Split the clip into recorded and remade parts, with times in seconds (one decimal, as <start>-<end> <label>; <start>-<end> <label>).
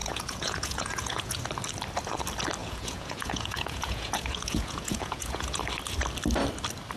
0.0-1.4 remade; 1.4-2.6 recorded; 2.6-5.6 remade; 5.6-7.0 recorded